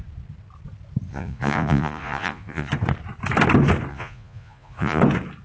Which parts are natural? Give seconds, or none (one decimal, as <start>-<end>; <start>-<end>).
0.0-1.1; 2.7-3.9; 5.0-5.4